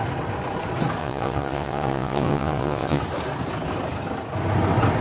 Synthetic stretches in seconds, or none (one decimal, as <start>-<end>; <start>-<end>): 1.0-3.0